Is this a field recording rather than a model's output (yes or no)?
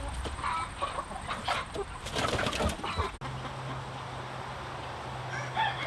yes